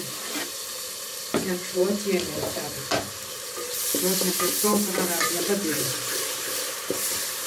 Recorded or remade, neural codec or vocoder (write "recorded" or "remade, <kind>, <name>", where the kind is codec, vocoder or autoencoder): remade, vocoder, BigVGAN v2